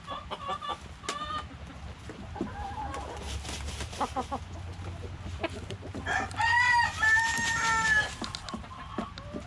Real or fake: real